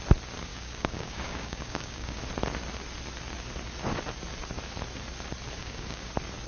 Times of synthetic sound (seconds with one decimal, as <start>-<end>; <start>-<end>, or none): 0.5-2.2; 5.6-6.1

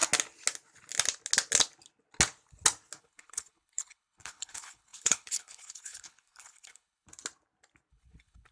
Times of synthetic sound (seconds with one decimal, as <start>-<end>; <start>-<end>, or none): 3.0-7.1; 7.9-8.5

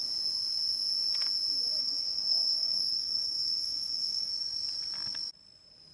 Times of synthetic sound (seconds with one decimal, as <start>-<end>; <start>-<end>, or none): 1.8-4.3

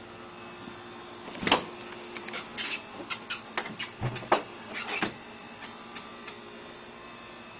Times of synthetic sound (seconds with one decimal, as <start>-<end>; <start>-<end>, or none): none